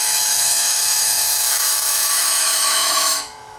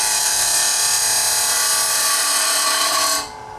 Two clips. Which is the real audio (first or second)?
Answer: second